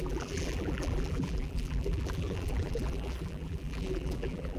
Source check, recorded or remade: remade